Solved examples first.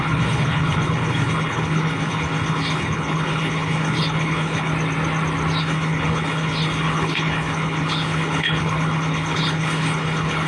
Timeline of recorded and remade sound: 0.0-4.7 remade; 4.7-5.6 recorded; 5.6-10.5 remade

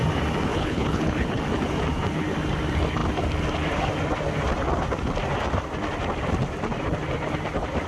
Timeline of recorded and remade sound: 0.0-0.5 recorded; 0.5-1.4 remade; 1.4-7.9 recorded